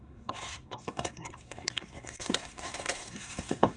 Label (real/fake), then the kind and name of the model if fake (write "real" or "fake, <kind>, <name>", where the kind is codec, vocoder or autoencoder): fake, codec, SNAC